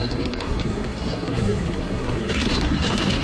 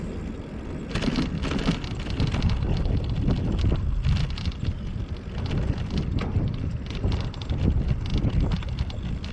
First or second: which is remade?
first